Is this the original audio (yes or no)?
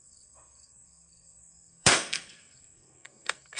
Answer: no